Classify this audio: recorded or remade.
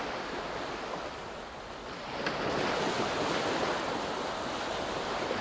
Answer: recorded